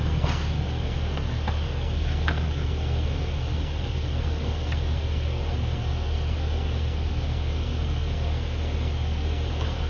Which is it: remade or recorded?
remade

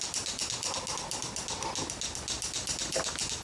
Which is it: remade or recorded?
recorded